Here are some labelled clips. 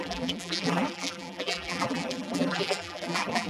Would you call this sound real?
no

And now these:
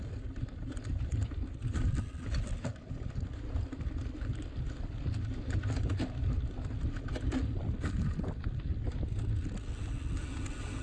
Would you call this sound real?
yes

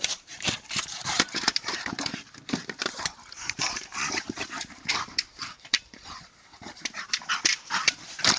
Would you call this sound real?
no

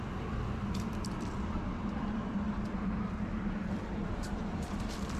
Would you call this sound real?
no